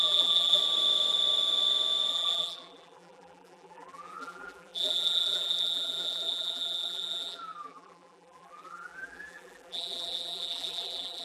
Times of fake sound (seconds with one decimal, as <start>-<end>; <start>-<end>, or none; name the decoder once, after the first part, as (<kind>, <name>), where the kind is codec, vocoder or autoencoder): 0.0-0.6 (vocoder, BigVGAN v2); 2.1-11.2